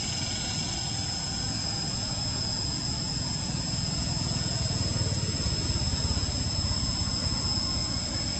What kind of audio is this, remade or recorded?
remade